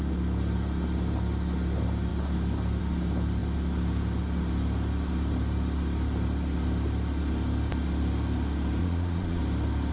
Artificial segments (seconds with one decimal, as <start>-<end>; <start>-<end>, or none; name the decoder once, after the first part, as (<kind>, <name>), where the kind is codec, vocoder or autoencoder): 8.8-9.4 (vocoder, Vocos)